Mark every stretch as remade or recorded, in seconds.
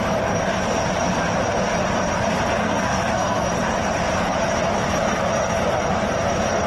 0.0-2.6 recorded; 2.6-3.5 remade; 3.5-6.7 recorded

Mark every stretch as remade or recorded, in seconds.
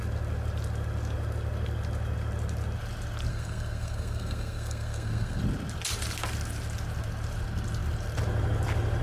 0.0-3.3 recorded; 3.3-5.4 remade; 5.4-9.0 recorded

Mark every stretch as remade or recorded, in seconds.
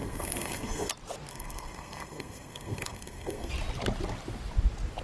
0.0-0.9 remade; 0.9-1.3 recorded; 1.3-3.5 remade; 3.5-5.0 recorded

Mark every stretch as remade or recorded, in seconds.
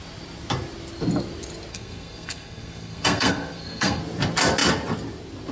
0.0-1.7 recorded; 1.7-4.0 remade; 4.0-5.5 recorded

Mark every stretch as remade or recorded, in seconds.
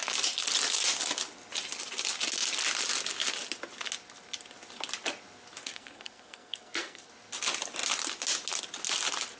0.0-5.6 recorded; 5.6-7.1 remade; 7.1-9.4 recorded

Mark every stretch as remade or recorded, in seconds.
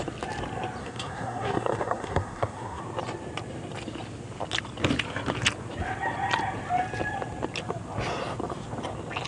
0.0-0.8 recorded; 0.8-2.8 remade; 2.8-9.3 recorded